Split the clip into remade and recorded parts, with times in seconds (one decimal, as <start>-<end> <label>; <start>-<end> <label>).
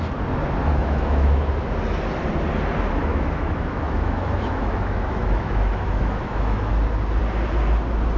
0.0-0.6 recorded; 0.6-1.5 remade; 1.5-3.1 recorded; 3.1-6.7 remade; 6.7-8.2 recorded